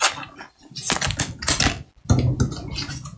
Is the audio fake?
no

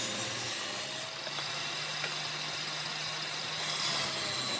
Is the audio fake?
no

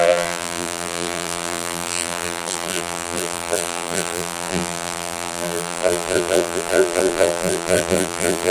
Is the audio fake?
yes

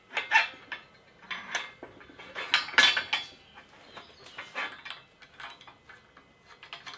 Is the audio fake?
no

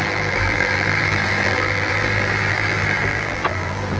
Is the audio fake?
yes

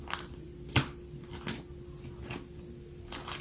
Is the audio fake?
no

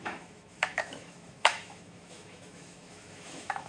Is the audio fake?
yes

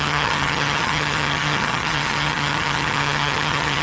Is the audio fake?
yes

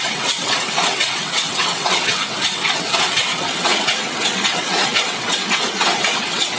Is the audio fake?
yes